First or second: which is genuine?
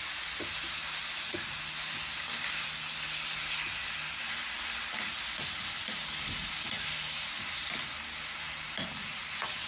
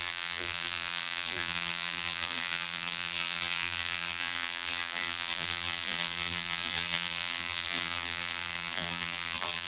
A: first